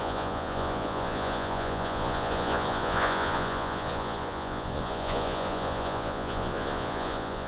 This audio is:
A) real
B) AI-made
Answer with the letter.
B